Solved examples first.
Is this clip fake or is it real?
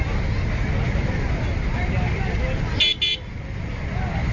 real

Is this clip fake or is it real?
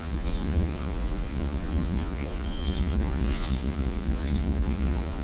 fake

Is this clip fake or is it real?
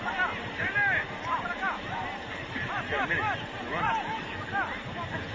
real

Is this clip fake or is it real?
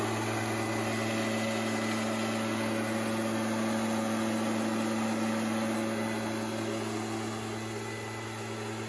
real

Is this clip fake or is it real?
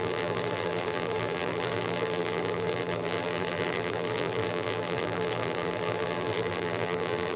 fake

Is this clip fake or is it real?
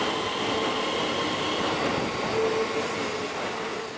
real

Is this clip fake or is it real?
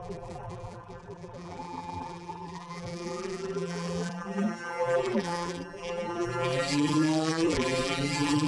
fake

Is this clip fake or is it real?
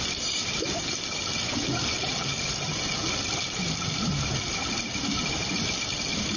real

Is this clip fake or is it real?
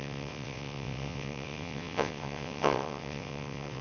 fake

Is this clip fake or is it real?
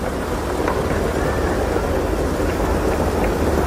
real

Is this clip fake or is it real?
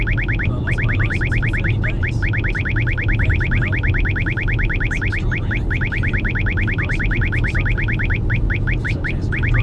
real